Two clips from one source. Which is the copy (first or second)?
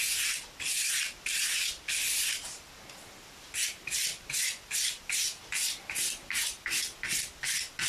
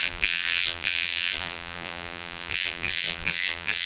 second